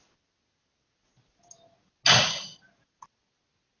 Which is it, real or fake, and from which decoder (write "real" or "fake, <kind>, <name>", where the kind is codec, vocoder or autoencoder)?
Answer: real